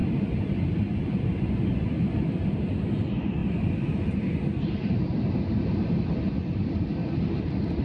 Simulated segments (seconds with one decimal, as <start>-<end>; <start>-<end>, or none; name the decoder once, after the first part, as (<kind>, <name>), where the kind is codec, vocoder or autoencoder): 1.9-3.4 (vocoder, BigVGAN v2); 5.5-7.0